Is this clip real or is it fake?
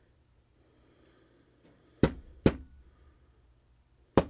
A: fake